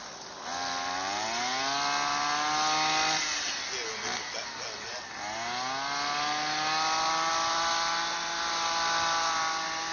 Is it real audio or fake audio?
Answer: real